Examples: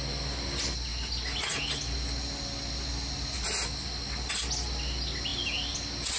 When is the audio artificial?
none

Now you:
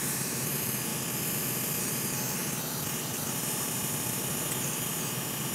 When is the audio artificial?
0.0-0.9; 1.8-2.4; 3.0-4.2; 4.9-5.5

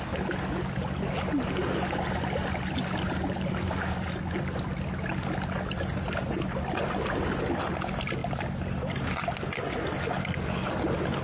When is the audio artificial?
none

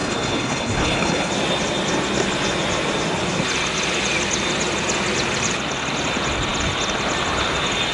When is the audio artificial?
0.0-1.3

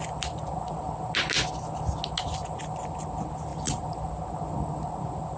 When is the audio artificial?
none

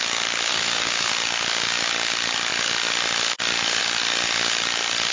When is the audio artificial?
0.5-1.1